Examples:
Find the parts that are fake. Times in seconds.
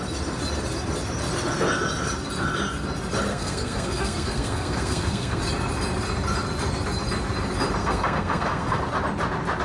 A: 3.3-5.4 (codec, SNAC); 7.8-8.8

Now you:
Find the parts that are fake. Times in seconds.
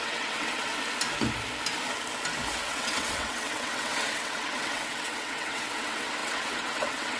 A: 0.0-0.7 (vocoder, WaveNeXt); 2.6-7.2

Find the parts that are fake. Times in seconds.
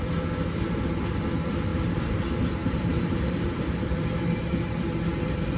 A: 1.7-2.2 (vocoder, BigVGAN v2); 2.6-4.5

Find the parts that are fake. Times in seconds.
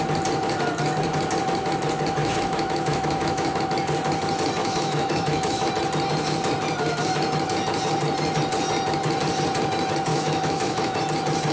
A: 2.2-3.6 (autoencoder, DAC-VAE); 4.6-5.7; 10.1-11.0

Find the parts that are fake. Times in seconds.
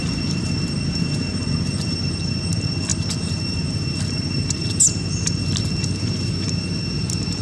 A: none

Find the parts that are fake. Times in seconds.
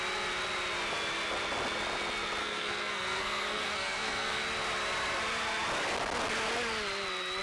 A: 2.4-4.4 (codec, SNAC)